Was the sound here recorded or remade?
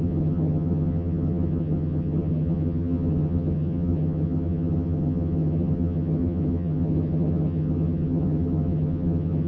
remade